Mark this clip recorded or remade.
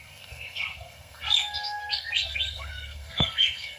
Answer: remade